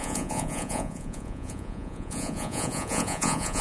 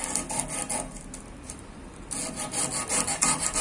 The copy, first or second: first